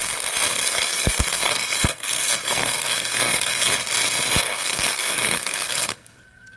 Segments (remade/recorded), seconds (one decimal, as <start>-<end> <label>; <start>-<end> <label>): 0.0-0.5 recorded; 0.5-3.7 remade; 3.7-4.5 recorded; 4.5-6.6 remade